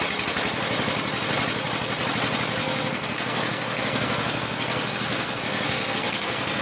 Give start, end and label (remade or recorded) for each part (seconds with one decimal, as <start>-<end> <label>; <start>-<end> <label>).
0.0-2.6 recorded; 2.6-6.6 remade